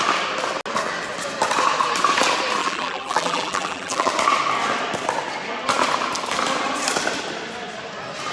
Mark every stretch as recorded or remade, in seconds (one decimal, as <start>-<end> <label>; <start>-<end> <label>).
0.0-2.6 recorded; 2.6-4.1 remade; 4.1-8.3 recorded